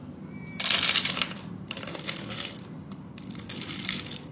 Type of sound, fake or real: fake